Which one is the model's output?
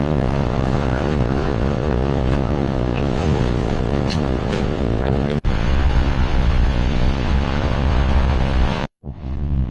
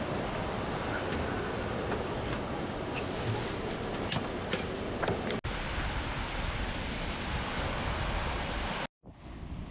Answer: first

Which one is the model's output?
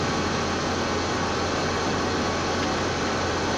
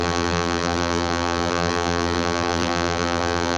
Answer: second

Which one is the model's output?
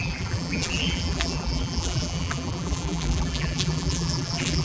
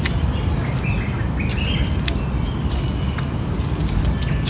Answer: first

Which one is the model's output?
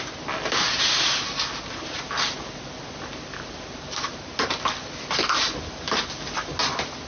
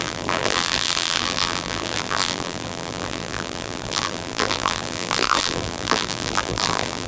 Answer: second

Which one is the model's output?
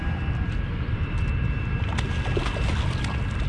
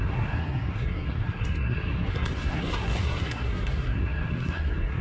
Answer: second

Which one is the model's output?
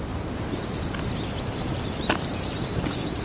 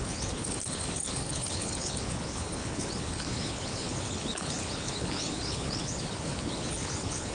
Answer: second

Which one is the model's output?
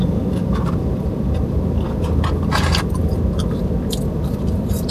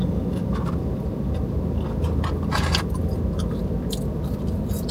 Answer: first